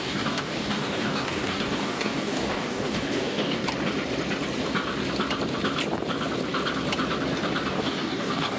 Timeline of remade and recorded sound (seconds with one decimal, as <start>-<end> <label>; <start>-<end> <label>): 0.0-3.6 remade; 3.6-7.7 recorded; 7.7-8.6 remade